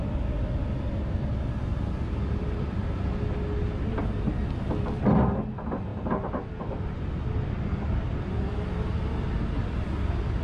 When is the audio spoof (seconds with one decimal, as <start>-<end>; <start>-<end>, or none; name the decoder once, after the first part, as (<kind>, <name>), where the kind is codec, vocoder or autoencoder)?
1.7-2.7 (vocoder, BigVGAN v2)